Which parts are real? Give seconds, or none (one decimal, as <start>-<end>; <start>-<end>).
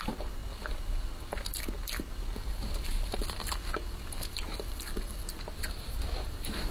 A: 0.4-2.7; 3.2-5.5